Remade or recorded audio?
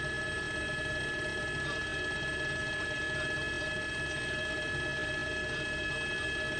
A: recorded